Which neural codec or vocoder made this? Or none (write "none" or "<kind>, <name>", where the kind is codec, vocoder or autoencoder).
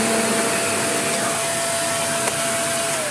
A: none